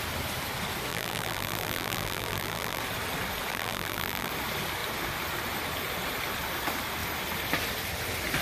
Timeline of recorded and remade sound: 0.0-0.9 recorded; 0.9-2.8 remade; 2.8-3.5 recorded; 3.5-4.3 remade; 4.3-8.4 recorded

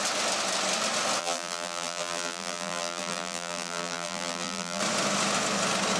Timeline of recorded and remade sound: 0.0-1.2 recorded; 1.2-4.8 remade; 4.8-6.0 recorded

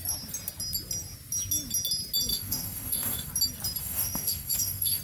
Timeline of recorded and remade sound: 0.0-2.3 recorded; 2.3-3.3 remade; 3.3-3.8 recorded; 3.8-5.0 remade